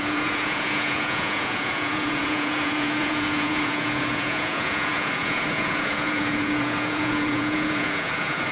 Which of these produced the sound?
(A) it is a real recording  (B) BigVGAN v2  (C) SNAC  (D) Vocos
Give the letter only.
D